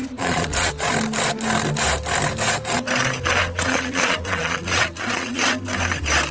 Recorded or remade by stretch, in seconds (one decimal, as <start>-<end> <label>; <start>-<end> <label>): 0.0-0.7 remade; 0.7-3.4 recorded; 3.4-5.4 remade; 5.4-6.3 recorded